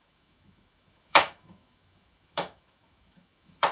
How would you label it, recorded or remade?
remade